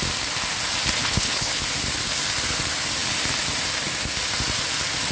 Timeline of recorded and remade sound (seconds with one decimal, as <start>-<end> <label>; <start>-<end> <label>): 0.0-1.0 recorded; 1.0-1.6 remade; 1.6-5.1 recorded